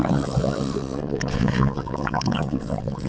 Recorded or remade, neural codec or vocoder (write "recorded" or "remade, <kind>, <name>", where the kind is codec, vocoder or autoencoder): remade, vocoder, WaveNeXt